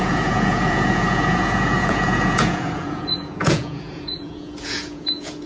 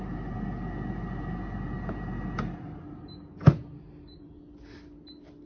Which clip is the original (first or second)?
second